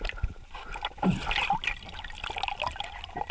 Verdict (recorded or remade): recorded